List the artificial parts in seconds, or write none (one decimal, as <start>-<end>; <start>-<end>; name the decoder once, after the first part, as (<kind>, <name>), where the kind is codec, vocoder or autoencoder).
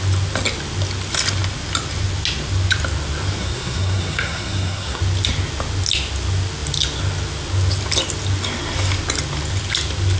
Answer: 3.4-5.0 (codec, SNAC)